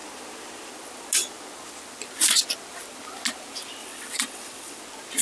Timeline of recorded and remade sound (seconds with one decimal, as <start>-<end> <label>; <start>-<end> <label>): 0.0-3.8 recorded; 3.8-4.8 remade; 4.8-5.2 recorded